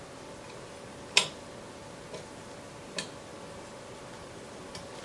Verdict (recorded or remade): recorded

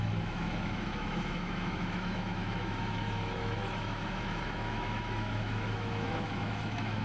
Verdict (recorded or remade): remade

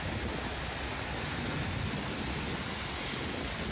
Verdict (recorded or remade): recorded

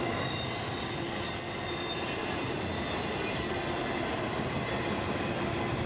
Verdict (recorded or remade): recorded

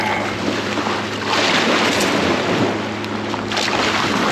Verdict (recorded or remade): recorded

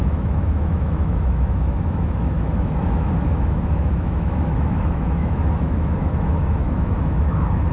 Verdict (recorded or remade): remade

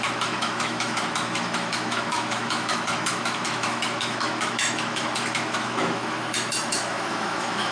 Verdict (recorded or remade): remade